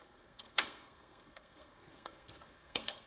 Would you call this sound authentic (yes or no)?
no